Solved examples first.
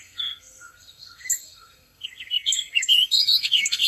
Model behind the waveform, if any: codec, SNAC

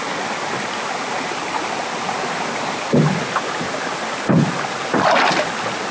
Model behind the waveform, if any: none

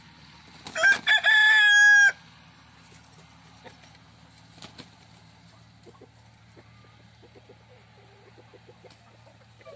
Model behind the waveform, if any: none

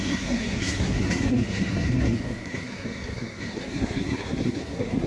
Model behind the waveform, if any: codec, SNAC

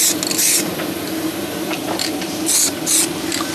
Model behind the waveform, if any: none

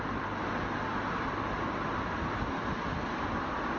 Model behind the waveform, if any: none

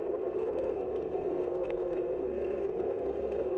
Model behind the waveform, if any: codec, SNAC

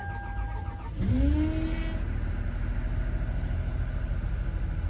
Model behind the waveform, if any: none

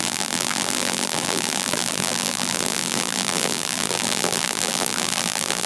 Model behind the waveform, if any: vocoder, BigVGAN v2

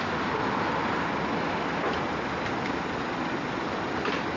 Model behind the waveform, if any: none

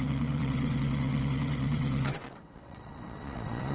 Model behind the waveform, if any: vocoder, WaveNeXt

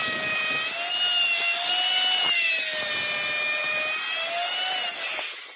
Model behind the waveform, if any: none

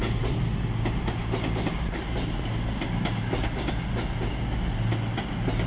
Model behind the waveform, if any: none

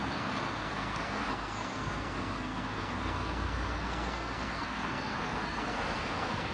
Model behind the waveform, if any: codec, SNAC